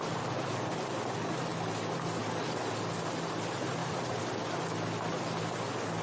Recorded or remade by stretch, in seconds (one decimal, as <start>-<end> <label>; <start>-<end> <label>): 0.0-3.8 recorded; 3.8-4.3 remade; 4.3-6.0 recorded